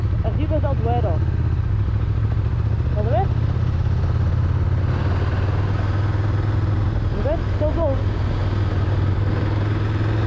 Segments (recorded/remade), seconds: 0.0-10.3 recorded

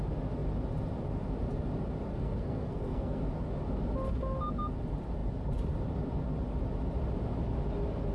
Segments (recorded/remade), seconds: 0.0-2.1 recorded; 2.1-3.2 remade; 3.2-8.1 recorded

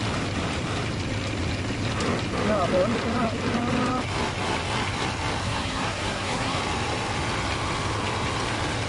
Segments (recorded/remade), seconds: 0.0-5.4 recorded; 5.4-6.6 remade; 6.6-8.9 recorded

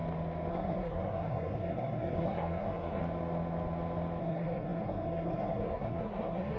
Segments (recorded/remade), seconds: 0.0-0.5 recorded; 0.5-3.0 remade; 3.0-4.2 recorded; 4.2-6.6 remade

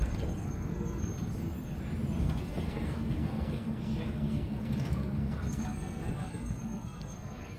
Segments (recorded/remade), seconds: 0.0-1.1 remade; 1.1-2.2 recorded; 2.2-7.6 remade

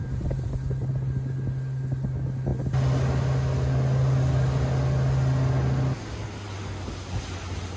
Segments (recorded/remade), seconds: 0.0-7.8 recorded